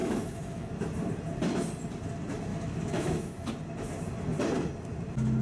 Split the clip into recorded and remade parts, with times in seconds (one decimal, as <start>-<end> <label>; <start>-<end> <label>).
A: 0.0-0.7 remade; 0.7-2.5 recorded; 2.5-3.5 remade; 3.5-5.4 recorded